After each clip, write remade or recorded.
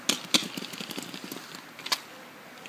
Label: recorded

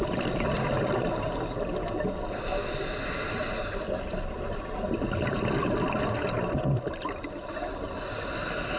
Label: recorded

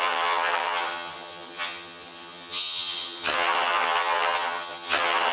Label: remade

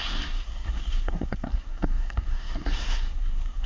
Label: remade